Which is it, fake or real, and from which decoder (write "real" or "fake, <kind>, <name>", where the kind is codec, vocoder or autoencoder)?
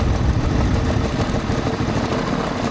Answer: real